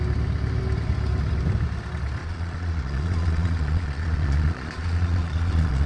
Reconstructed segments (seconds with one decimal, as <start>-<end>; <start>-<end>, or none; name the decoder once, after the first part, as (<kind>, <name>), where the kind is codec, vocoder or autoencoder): 2.2-5.9 (vocoder, Vocos)